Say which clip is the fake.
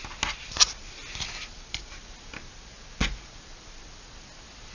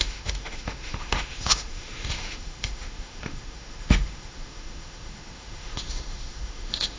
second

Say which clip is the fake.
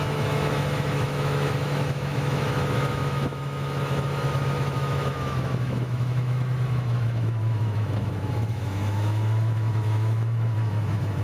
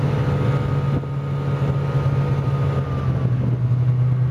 first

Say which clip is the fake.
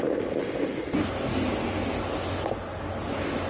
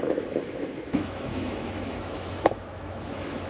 second